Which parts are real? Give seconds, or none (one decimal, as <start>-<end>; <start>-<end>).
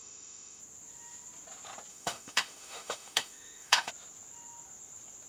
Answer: 0.6-1.9; 3.9-5.3